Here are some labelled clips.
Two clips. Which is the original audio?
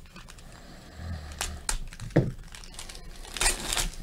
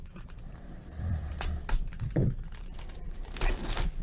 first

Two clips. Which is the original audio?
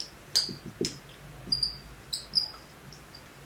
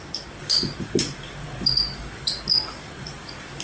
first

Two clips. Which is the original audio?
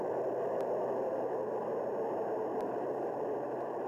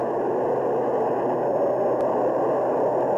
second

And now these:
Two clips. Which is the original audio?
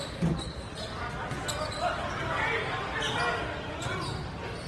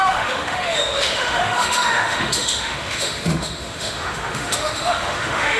first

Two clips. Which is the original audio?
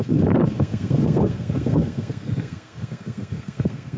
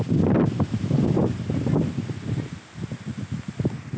second